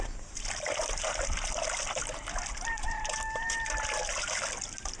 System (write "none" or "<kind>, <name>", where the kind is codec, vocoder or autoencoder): none